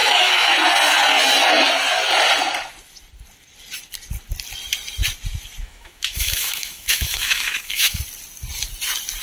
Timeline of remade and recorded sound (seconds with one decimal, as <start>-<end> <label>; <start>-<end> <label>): 0.0-0.5 remade; 0.5-5.6 recorded; 5.6-8.0 remade; 8.0-9.2 recorded